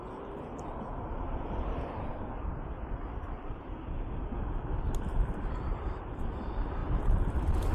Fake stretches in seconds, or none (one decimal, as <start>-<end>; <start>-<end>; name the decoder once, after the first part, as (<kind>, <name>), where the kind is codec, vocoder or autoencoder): none